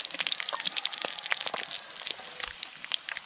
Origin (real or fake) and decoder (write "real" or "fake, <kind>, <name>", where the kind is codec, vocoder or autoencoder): real